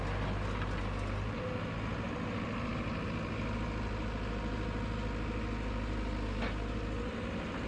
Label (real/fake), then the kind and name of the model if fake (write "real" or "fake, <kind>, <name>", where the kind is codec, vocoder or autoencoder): real